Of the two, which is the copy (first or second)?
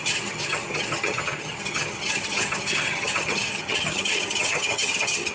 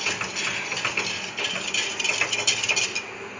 first